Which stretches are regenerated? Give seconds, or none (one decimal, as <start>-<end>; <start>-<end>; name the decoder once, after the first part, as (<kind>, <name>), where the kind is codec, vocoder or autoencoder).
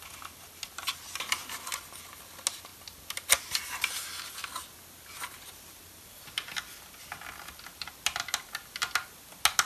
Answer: none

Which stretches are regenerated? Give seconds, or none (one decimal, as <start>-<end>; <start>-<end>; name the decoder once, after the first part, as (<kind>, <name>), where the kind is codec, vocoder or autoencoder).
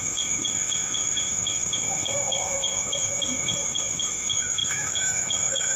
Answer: 0.0-5.8 (autoencoder, DAC-VAE)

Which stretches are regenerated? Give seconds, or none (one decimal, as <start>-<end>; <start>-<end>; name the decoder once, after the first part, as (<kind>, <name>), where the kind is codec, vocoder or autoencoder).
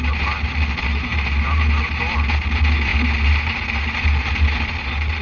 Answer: none